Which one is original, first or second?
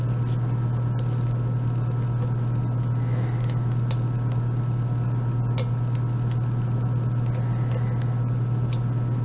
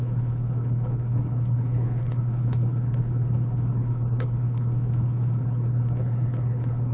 first